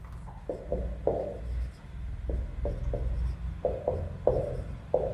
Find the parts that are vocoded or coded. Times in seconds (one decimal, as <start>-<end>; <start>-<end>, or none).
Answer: none